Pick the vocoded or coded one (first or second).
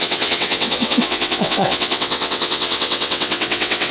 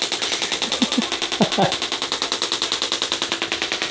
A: first